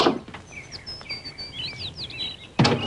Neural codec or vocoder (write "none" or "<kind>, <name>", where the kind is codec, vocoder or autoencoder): none